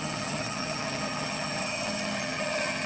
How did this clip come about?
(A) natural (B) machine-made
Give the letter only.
B